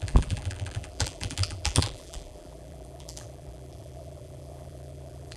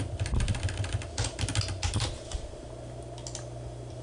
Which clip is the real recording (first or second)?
second